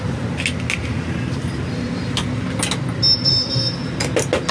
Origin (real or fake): real